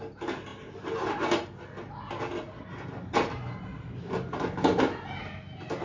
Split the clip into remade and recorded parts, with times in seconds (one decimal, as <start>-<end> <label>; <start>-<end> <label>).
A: 0.0-3.7 recorded; 3.7-4.8 remade; 4.8-5.8 recorded